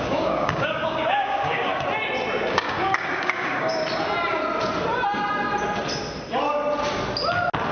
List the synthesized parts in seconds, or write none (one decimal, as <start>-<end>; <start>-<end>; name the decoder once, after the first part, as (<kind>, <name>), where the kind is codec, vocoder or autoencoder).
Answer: 0.0-1.7 (codec, DAC); 2.5-3.8